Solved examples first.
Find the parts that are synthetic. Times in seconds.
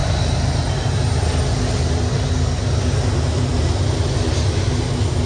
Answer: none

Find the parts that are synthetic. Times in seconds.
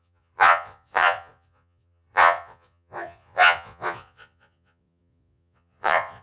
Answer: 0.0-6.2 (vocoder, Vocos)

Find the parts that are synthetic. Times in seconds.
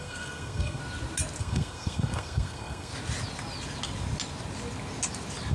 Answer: 0.0-0.8 (codec, SNAC); 1.4-2.9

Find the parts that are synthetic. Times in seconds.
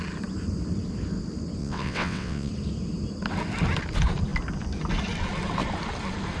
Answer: 1.6-2.5 (vocoder, WaveNeXt)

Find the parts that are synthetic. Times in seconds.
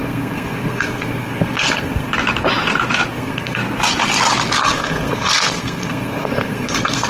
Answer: 0.0-2.1 (codec, SNAC); 3.1-3.6; 4.6-7.1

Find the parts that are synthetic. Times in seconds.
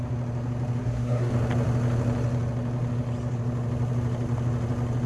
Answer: 0.8-1.3 (codec, SNAC)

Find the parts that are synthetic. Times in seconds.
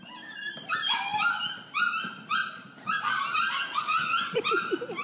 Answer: 3.7-4.4 (vocoder, Vocos)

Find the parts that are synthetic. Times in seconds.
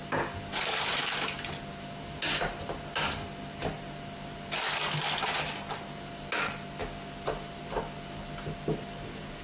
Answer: none